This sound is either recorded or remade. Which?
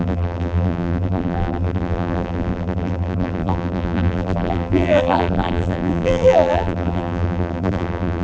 remade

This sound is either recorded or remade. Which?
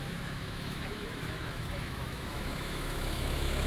remade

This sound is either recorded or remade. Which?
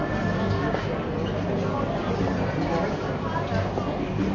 recorded